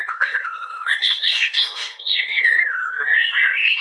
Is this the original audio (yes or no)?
no